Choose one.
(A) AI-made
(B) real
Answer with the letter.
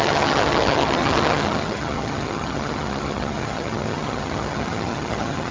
A